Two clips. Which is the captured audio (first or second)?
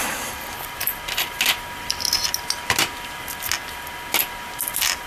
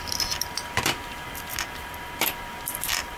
first